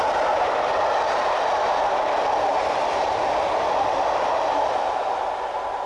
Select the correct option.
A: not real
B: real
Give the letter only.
B